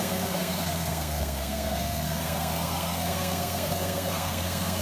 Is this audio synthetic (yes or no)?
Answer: yes